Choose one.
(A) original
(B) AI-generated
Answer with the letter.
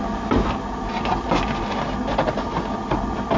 A